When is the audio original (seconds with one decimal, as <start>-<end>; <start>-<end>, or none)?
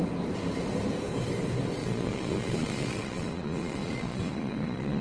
0.0-1.8